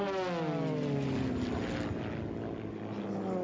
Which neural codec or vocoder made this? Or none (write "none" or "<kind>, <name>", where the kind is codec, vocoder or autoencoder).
none